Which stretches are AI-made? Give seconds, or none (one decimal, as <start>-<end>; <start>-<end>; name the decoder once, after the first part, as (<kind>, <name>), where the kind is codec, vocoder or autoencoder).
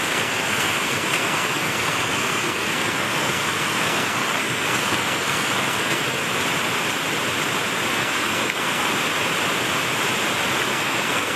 0.0-6.2 (codec, SNAC); 7.9-8.9; 10.7-11.4